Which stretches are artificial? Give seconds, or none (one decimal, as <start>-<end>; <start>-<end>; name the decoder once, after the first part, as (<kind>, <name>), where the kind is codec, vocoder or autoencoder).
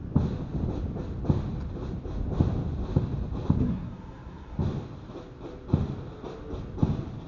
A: 3.6-4.6 (codec, SNAC)